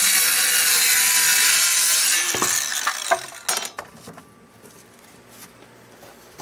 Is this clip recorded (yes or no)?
yes